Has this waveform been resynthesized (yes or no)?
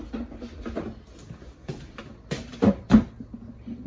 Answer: no